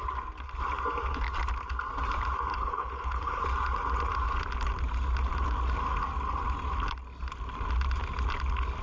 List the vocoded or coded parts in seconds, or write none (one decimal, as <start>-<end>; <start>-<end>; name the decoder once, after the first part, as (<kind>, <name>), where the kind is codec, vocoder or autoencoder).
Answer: 2.5-3.4 (codec, HILCodec)